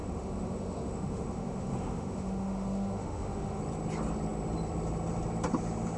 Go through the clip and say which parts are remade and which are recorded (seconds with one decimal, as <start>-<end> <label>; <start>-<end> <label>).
0.0-3.6 remade; 3.6-6.0 recorded